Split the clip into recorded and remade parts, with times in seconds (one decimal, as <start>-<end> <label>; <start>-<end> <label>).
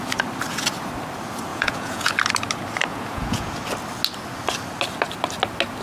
0.0-1.5 recorded; 1.5-2.1 remade; 2.1-2.9 recorded; 2.9-3.5 remade; 3.5-5.8 recorded